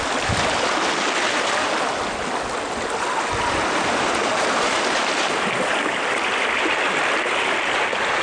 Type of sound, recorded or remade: recorded